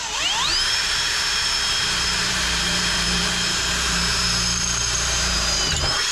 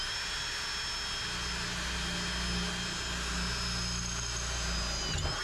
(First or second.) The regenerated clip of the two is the first